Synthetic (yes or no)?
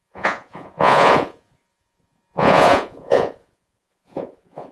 yes